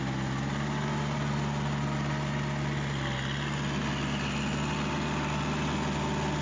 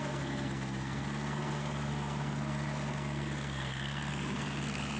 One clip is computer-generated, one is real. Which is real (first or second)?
first